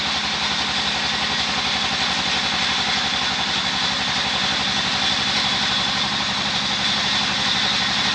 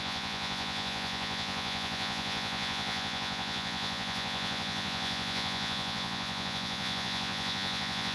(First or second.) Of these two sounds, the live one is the first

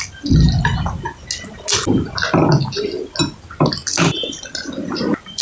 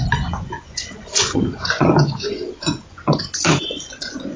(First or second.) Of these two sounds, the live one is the first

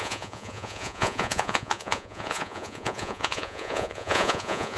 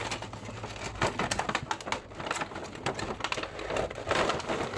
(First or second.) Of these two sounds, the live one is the second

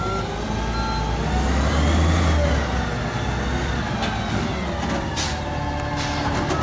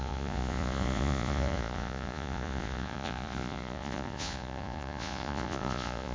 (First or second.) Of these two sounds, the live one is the first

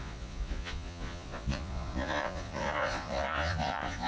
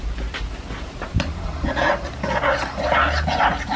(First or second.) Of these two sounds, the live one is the second